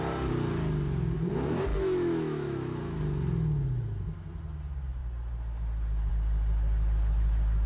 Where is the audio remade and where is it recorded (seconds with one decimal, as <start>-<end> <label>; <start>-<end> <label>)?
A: 0.0-1.7 recorded; 1.7-3.0 remade; 3.0-7.7 recorded